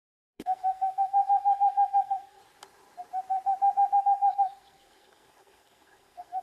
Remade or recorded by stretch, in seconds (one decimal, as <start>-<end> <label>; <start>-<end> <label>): 0.0-2.4 remade; 2.4-4.0 recorded; 4.0-6.4 remade